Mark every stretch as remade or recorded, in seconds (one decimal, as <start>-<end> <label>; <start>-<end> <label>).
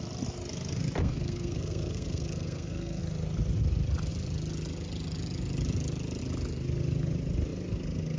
0.0-1.0 recorded; 1.0-3.0 remade; 3.0-8.2 recorded